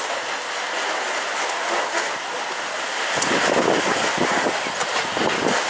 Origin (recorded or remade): recorded